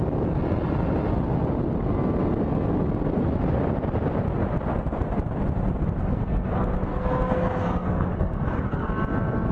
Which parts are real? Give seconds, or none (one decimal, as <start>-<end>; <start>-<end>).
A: 0.0-6.0; 6.5-6.9; 8.9-9.5